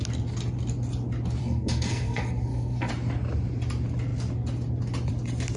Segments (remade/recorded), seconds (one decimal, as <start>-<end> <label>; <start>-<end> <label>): 0.0-1.4 recorded; 1.4-2.9 remade; 2.9-5.6 recorded